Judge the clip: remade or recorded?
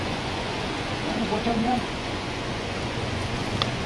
remade